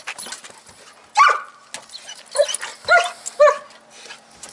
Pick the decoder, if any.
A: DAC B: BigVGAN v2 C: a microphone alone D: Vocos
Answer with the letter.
C